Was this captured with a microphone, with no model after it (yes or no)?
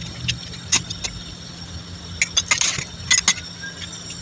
yes